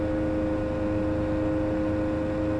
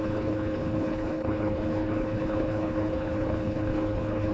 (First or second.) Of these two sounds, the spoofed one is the second